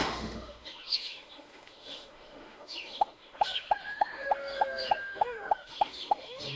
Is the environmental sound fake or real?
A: fake